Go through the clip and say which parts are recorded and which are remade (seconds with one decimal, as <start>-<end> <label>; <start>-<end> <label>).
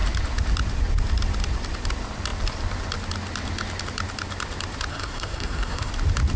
0.0-4.9 recorded; 4.9-5.9 remade; 5.9-6.4 recorded